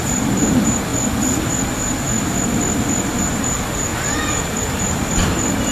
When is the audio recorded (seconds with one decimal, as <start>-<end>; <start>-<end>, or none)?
0.9-3.2; 3.9-4.6